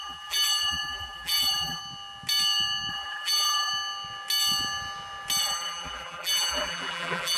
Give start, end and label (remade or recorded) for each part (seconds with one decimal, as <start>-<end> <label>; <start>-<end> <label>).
0.0-1.8 remade; 1.8-2.9 recorded; 2.9-3.7 remade; 3.7-5.4 recorded; 5.4-7.4 remade